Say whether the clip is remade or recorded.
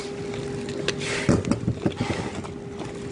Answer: recorded